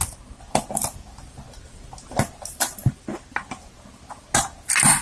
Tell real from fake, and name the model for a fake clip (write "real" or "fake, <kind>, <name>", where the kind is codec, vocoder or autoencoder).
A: real